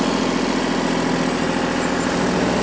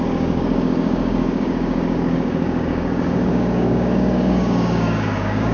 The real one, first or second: first